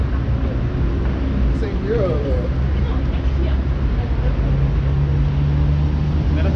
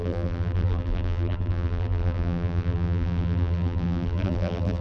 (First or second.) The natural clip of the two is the first